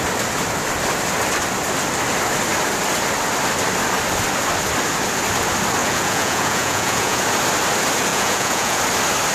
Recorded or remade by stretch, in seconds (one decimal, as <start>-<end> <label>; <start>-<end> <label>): 0.0-5.8 recorded; 5.8-7.2 remade; 7.2-8.1 recorded; 8.1-8.8 remade; 8.8-9.3 recorded

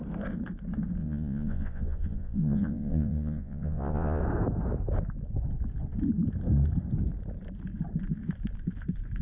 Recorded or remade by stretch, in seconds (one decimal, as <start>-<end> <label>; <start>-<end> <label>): 0.0-1.0 recorded; 1.0-4.2 remade; 4.2-9.2 recorded

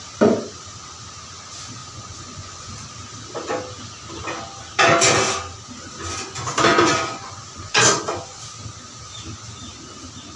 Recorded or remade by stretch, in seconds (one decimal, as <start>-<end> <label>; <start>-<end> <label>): 0.0-1.8 recorded; 1.8-2.7 remade; 2.7-6.7 recorded; 6.7-8.4 remade; 8.4-10.4 recorded

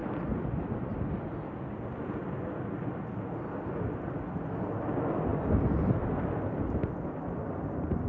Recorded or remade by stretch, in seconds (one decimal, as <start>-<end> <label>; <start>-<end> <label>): 0.0-8.1 recorded

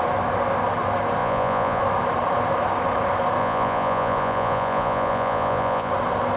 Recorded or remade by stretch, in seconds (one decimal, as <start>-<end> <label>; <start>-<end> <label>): 0.0-1.2 recorded; 1.2-1.8 remade; 1.8-3.4 recorded; 3.4-5.9 remade; 5.9-6.4 recorded

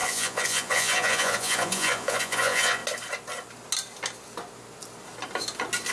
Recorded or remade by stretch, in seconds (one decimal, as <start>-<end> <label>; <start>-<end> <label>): 0.0-2.8 remade; 2.8-5.9 recorded

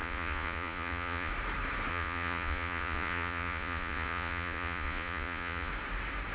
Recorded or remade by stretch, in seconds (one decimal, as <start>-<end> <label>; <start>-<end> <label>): 0.0-1.3 remade; 1.3-1.9 recorded; 1.9-5.7 remade; 5.7-6.3 recorded

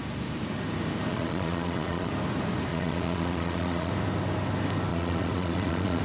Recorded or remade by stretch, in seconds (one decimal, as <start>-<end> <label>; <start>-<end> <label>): 0.0-1.1 recorded; 1.1-2.1 remade; 2.1-2.7 recorded; 2.7-3.9 remade; 3.9-4.9 recorded; 4.9-6.0 remade